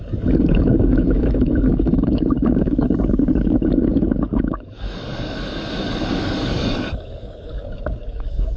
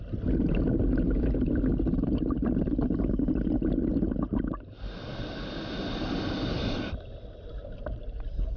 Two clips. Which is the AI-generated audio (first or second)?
first